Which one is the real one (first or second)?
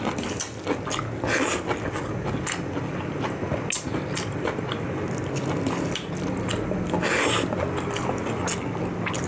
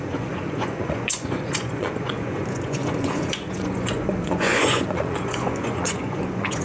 first